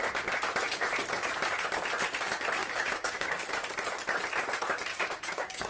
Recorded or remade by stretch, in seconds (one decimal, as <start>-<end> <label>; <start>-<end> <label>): 0.0-2.6 recorded; 2.6-3.5 remade; 3.5-4.9 recorded; 4.9-5.7 remade